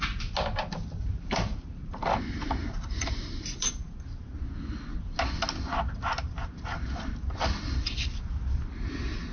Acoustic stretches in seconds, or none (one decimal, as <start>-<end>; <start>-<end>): 0.0-2.6; 3.7-9.3

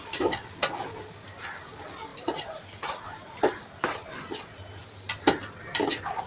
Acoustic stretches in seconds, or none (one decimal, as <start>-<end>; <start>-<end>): 0.0-2.1; 3.3-6.3

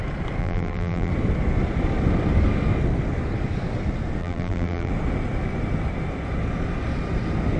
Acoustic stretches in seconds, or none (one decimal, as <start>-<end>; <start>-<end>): 0.0-0.4; 1.1-4.2; 4.9-7.6

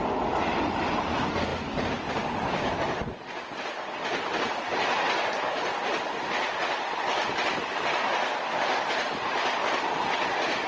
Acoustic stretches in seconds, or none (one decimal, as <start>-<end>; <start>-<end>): 0.0-10.7

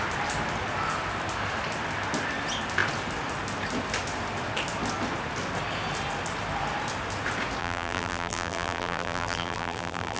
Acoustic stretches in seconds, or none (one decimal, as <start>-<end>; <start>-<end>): 0.0-7.6

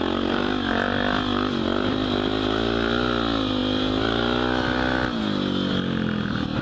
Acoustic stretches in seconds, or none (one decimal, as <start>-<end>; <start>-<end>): 0.0-6.6

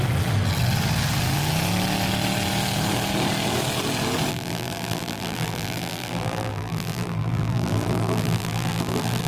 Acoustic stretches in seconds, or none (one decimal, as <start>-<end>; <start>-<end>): 0.0-4.3

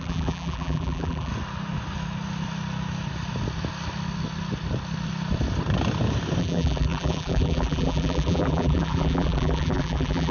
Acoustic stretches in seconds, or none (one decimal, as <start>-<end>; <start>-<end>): 1.3-6.4